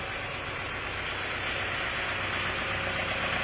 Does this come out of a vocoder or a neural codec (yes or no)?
no